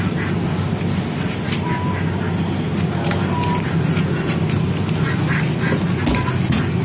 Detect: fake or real real